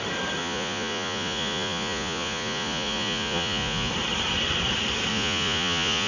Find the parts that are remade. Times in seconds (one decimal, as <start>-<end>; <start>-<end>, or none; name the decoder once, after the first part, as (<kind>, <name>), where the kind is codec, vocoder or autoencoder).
0.4-3.9 (vocoder, Vocos); 5.1-6.1